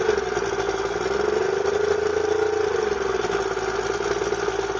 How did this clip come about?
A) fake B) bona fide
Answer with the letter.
B